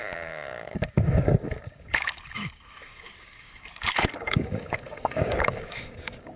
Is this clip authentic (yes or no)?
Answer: no